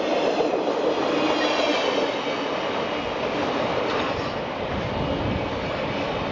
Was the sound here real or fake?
real